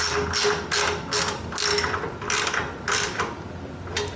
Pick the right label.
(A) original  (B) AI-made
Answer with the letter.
A